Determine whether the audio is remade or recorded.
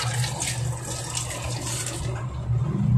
recorded